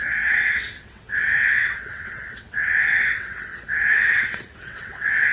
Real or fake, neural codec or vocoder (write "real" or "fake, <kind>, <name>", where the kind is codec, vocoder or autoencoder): fake, vocoder, WaveNeXt